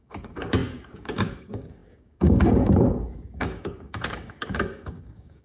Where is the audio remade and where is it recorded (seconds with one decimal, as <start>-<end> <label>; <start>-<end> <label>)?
0.0-5.4 remade